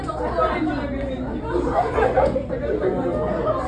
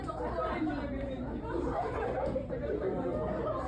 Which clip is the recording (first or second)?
first